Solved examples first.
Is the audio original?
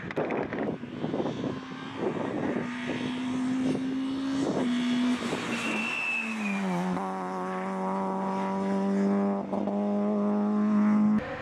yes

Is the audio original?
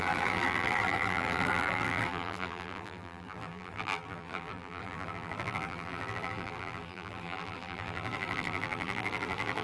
no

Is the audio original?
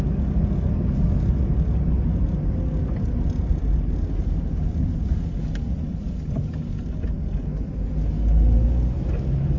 yes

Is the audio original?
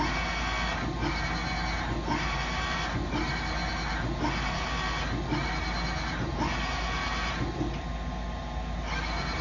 yes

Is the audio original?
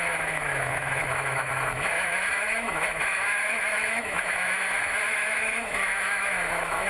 no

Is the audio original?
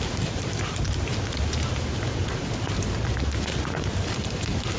yes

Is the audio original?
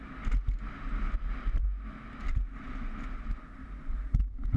yes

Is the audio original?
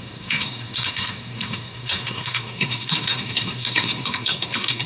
no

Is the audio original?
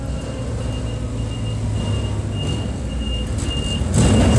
yes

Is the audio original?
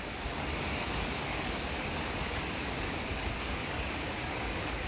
no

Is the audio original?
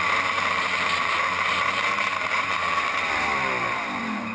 no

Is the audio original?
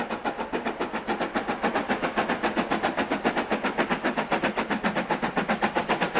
yes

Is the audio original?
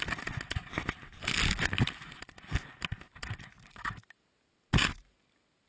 yes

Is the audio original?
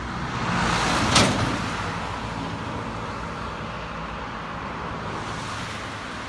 yes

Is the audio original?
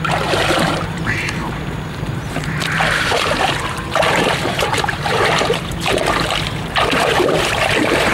no